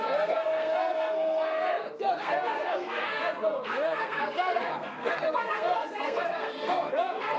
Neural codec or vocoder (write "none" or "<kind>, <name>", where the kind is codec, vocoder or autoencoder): codec, SNAC